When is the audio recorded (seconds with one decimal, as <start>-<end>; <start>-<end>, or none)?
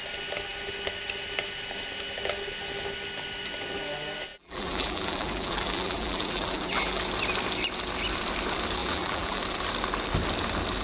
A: 0.0-4.3; 7.0-8.8; 9.4-10.8